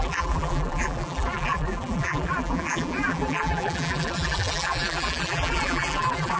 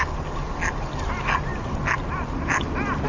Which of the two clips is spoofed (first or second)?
first